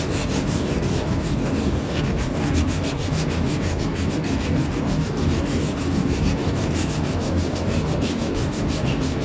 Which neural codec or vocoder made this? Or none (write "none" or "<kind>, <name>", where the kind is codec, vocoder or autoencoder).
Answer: codec, DAC